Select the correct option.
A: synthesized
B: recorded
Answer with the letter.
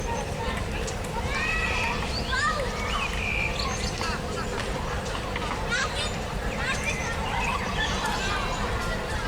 A